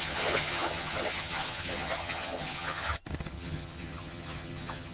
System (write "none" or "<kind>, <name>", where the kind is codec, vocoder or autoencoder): vocoder, HiFi-GAN